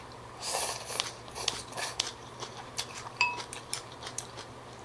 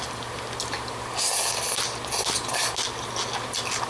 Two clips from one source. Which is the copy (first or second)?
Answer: first